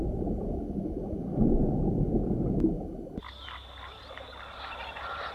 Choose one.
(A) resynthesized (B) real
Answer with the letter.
B